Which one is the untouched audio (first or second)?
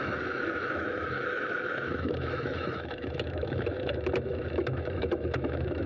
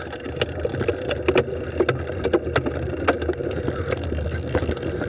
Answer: second